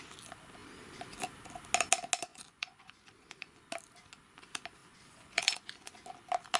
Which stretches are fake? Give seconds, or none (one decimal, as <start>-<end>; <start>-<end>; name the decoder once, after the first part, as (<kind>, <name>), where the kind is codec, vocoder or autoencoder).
2.3-3.6 (vocoder, Vocos); 4.8-5.9